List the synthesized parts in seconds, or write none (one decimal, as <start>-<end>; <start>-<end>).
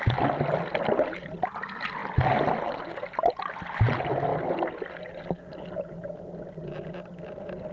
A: none